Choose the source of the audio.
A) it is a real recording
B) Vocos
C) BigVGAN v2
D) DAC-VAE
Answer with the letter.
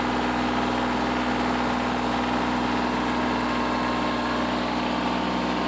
A